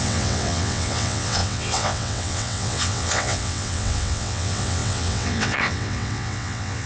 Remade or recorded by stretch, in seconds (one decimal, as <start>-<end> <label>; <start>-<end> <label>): 0.0-6.9 remade